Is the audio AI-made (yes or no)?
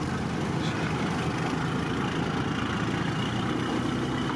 no